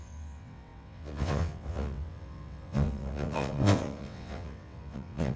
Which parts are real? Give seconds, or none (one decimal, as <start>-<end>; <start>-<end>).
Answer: none